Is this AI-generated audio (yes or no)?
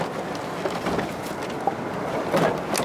no